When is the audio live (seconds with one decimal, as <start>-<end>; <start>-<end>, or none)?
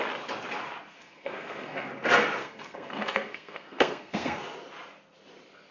0.0-1.0; 1.9-2.4; 4.4-5.7